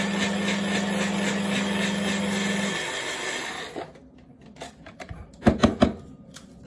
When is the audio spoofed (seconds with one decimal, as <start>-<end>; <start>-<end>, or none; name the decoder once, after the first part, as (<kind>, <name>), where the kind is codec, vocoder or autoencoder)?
none